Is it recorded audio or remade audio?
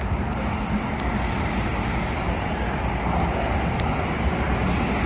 recorded